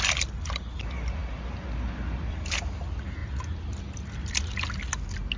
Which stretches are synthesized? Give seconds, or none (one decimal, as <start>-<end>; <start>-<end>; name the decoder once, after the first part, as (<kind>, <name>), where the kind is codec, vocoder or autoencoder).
none